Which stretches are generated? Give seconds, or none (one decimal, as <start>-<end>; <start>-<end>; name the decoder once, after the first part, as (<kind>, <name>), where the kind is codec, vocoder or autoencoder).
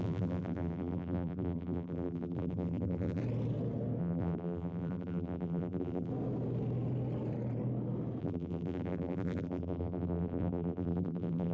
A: 0.0-3.2 (vocoder, BigVGAN v2); 4.0-6.1; 8.2-11.5